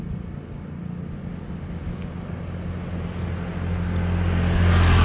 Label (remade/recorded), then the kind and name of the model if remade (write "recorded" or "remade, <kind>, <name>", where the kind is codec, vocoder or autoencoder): recorded